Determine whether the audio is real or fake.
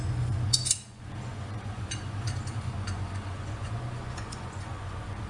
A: fake